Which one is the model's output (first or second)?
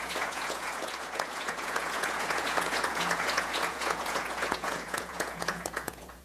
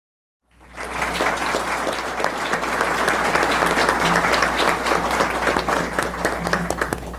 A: first